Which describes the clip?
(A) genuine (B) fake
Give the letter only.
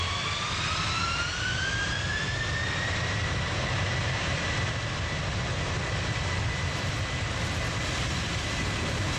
A